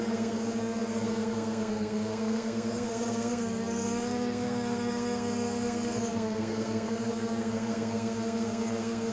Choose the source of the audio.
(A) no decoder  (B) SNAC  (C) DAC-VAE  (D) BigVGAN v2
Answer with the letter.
B